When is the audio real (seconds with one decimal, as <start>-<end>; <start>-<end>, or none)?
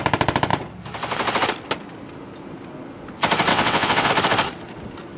0.0-3.5; 4.1-5.2